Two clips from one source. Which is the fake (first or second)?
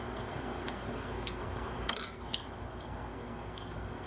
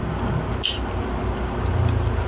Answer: first